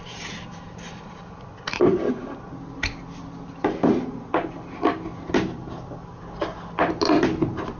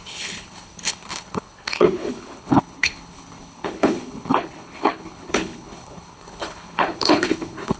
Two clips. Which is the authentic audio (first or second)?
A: first